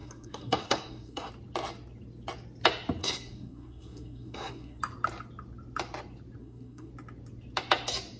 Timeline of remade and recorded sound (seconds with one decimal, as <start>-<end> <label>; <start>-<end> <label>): 0.0-1.3 remade; 1.3-3.0 recorded; 3.0-4.8 remade; 4.8-6.4 recorded; 6.4-6.9 remade; 6.9-8.2 recorded